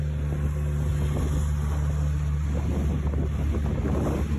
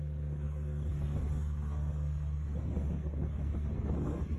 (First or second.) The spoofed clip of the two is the second